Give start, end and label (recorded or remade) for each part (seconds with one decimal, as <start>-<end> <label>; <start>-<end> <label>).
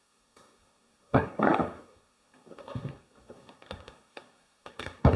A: 0.0-5.2 remade